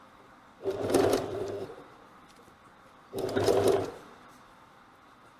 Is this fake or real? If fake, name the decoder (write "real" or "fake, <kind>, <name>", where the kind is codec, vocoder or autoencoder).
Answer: fake, vocoder, BigVGAN v2